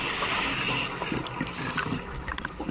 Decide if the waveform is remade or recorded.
recorded